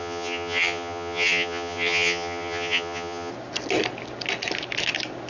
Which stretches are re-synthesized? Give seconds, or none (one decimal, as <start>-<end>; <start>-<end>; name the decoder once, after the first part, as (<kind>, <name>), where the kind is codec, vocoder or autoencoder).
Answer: 0.0-3.3 (vocoder, HiFi-GAN)